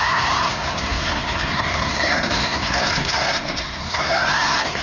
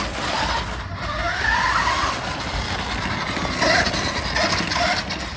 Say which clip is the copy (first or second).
first